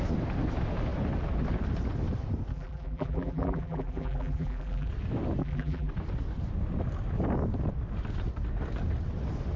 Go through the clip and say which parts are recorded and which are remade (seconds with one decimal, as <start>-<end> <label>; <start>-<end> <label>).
0.0-2.5 recorded; 2.5-4.9 remade; 4.9-5.4 recorded; 5.4-5.9 remade; 5.9-9.6 recorded